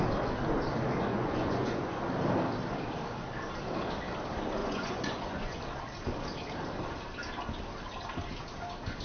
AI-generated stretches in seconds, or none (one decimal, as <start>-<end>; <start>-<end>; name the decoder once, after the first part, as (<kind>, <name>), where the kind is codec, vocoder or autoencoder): 1.1-2.0 (vocoder, Vocos); 4.6-5.6